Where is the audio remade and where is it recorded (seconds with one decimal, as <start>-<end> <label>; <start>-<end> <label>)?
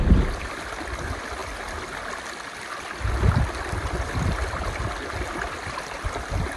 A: 0.0-6.6 recorded